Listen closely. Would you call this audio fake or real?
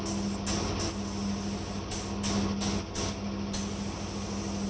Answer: real